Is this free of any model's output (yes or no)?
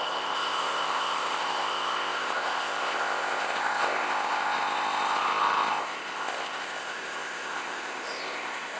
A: no